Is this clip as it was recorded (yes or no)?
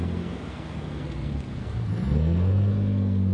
no